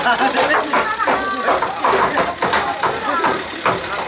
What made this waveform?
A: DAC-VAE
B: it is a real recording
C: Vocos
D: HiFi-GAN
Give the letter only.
B